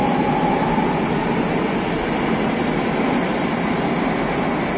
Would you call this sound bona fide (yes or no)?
yes